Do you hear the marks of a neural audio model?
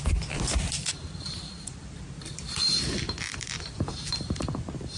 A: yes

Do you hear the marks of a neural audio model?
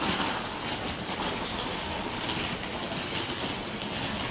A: no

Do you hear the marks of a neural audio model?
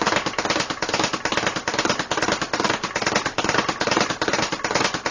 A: no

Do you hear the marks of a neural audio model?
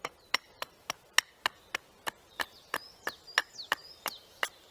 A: no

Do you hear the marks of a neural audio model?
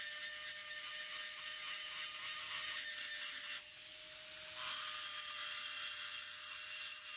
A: no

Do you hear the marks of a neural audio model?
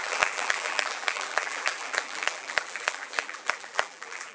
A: yes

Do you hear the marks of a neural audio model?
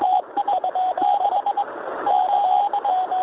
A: no